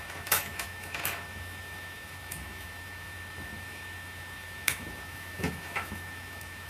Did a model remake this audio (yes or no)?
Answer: yes